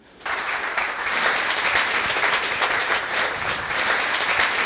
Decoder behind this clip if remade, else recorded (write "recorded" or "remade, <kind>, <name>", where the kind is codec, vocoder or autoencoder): remade, vocoder, BigVGAN v2